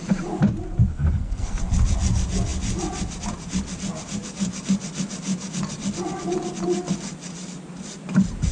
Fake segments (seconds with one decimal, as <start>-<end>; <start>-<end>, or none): 0.9-1.6